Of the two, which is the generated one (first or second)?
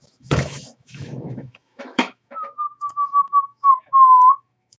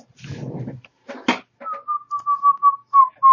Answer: first